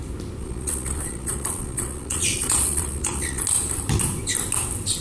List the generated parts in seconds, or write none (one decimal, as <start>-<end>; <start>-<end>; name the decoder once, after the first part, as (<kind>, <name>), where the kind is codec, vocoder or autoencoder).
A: 0.4-3.4 (vocoder, Vocos)